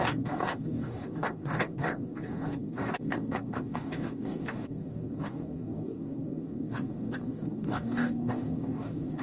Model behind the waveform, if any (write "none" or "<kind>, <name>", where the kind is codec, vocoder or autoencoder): codec, DAC